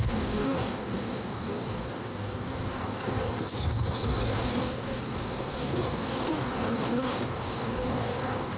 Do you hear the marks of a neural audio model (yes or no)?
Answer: yes